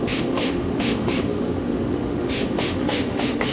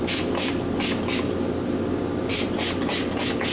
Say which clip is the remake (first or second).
first